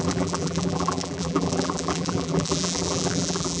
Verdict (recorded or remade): remade